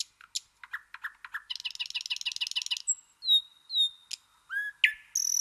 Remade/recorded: recorded